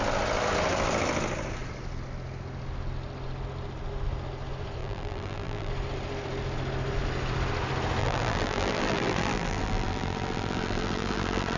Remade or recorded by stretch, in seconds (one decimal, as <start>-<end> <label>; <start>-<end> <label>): 0.0-4.8 recorded; 4.8-5.7 remade; 5.7-8.0 recorded; 8.0-11.6 remade